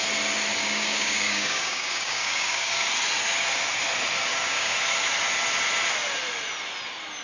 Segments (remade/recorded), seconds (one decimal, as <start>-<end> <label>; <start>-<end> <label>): 0.0-0.6 recorded; 0.6-2.9 remade; 2.9-4.3 recorded; 4.3-4.9 remade; 4.9-7.2 recorded